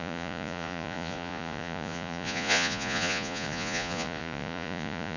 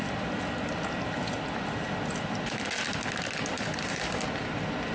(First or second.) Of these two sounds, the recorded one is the second